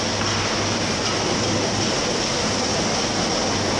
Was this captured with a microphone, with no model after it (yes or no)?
yes